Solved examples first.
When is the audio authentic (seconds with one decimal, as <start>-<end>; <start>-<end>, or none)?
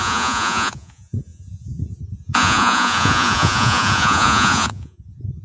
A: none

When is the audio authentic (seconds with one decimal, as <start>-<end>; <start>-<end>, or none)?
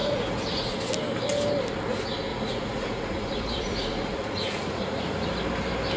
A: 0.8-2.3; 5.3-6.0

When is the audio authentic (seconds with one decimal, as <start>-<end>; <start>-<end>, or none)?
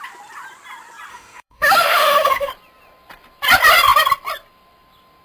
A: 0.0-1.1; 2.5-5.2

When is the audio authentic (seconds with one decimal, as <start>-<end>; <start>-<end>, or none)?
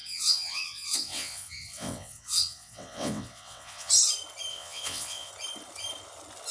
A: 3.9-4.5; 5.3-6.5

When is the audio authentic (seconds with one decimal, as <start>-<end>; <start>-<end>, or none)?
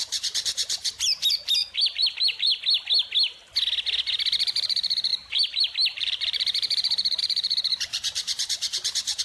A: 2.5-4.4